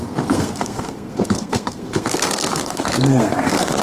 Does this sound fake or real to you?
fake